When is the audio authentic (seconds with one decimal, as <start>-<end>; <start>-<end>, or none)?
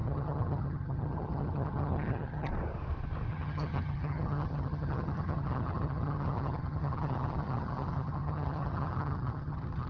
2.5-3.3